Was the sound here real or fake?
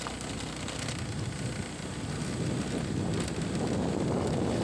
real